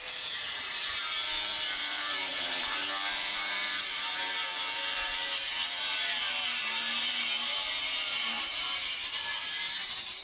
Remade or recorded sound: remade